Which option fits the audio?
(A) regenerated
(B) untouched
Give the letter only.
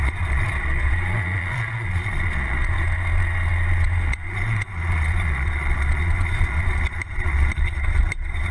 A